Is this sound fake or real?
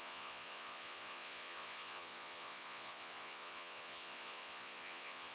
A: fake